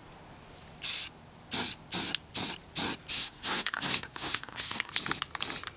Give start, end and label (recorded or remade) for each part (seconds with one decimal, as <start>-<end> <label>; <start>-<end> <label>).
0.0-3.1 recorded; 3.1-4.9 remade; 4.9-5.8 recorded